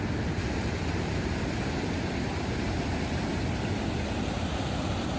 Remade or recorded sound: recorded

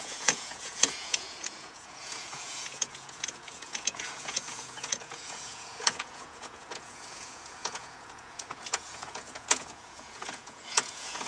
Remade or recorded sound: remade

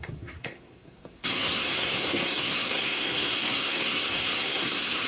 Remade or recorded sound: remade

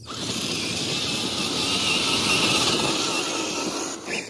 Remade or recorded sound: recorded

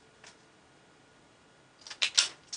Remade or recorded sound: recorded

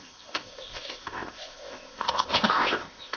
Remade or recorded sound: remade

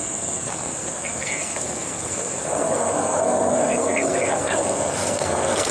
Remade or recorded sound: remade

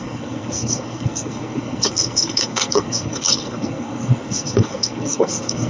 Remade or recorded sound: remade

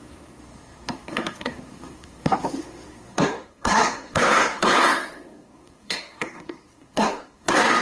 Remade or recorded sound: remade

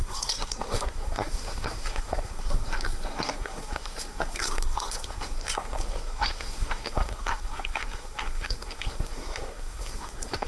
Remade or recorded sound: remade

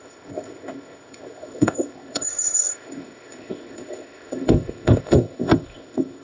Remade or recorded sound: remade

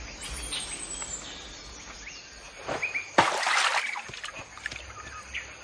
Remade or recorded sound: recorded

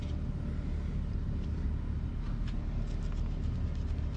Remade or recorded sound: recorded